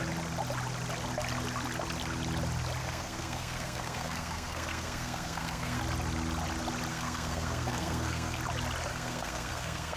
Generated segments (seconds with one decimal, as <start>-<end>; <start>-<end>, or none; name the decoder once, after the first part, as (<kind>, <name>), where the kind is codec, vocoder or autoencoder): 2.8-5.8 (codec, SNAC); 6.9-8.4; 8.9-10.0